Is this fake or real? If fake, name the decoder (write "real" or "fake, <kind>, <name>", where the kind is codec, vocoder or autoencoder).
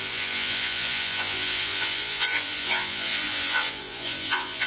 fake, vocoder, Vocos